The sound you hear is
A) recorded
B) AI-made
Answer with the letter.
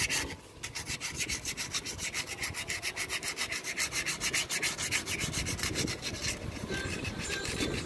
A